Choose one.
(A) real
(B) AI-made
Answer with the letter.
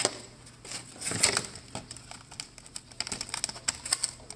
A